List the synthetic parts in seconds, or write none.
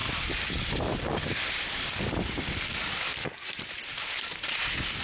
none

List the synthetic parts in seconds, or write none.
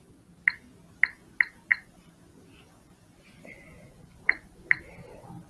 1.7-4.9 (vocoder, Vocos)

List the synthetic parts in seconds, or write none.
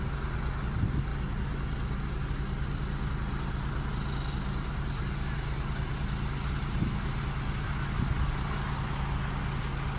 none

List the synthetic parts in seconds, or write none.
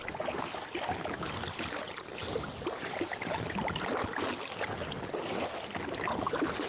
none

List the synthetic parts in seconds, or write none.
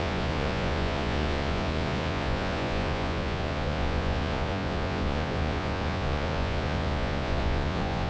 0.0-8.1 (vocoder, Vocos)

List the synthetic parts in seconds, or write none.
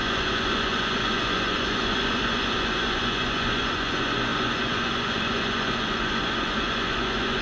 0.0-7.4 (vocoder, Vocos)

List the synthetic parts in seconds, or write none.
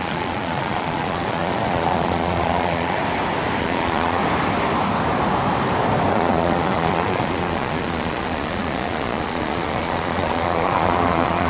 0.0-3.0 (vocoder, Vocos); 3.6-4.2; 6.1-11.5